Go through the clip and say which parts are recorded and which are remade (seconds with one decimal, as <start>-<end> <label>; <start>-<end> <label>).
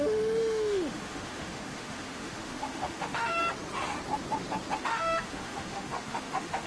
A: 0.0-3.4 remade; 3.4-4.8 recorded; 4.8-6.7 remade